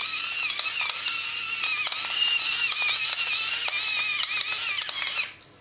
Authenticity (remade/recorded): recorded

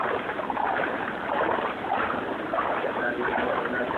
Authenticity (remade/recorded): remade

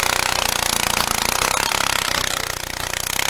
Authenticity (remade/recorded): recorded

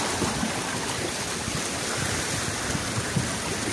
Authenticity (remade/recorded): recorded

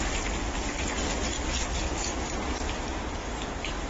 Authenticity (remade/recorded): recorded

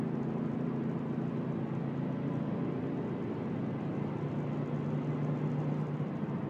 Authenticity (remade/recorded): recorded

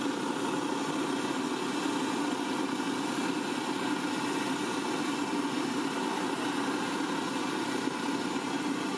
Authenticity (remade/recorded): recorded